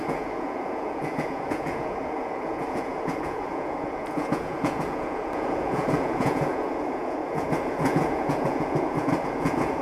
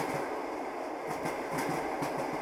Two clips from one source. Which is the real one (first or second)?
second